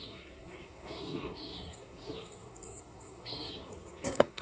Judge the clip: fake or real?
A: fake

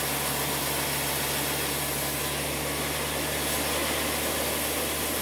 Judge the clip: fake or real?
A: real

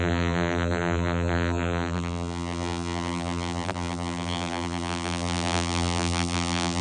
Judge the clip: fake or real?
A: fake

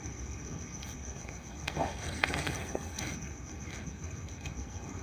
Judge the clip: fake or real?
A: fake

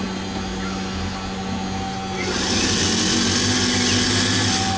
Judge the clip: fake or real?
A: real